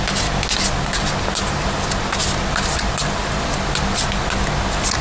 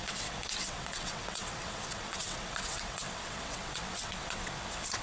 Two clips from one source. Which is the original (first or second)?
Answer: first